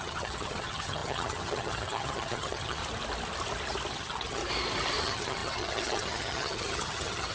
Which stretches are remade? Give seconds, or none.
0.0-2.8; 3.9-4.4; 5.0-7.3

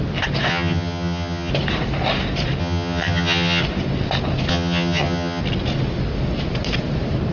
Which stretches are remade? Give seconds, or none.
0.5-1.5; 2.6-3.6; 4.5-5.4

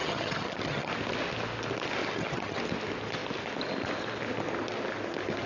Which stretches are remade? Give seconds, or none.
0.0-0.9; 2.0-2.6

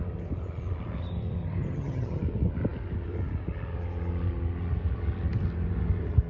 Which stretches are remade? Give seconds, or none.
1.4-2.2

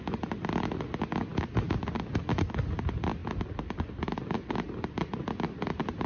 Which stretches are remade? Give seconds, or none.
none